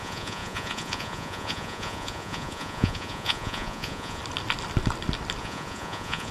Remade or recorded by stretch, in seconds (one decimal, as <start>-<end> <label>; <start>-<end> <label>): 0.0-4.2 remade; 4.2-5.4 recorded; 5.4-6.3 remade